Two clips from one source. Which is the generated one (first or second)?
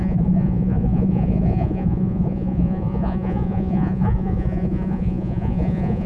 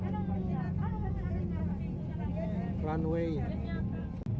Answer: first